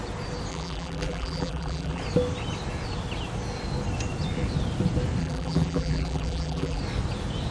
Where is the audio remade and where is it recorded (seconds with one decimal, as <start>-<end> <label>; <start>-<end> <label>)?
0.0-0.5 recorded; 0.5-2.0 remade; 2.0-5.2 recorded; 5.2-6.8 remade; 6.8-7.5 recorded